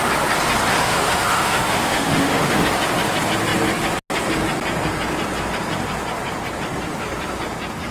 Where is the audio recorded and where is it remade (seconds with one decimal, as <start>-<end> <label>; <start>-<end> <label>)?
0.0-0.7 recorded; 0.7-2.6 remade; 2.6-7.9 recorded